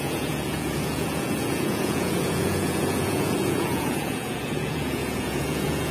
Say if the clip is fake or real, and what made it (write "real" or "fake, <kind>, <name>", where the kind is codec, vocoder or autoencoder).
fake, vocoder, Vocos